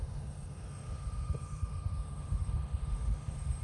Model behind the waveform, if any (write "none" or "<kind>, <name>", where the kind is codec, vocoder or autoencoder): autoencoder, DAC-VAE